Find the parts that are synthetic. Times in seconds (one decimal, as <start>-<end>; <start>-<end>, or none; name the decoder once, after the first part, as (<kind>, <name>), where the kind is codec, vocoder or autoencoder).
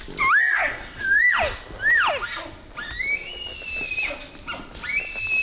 0.4-1.0 (codec, SNAC)